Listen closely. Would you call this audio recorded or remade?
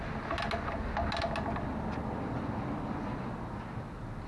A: recorded